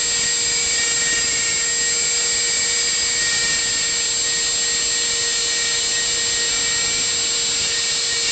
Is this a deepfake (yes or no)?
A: no